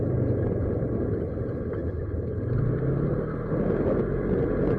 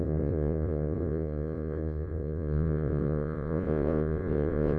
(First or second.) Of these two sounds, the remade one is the second